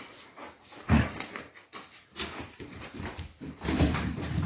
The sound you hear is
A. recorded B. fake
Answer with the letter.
A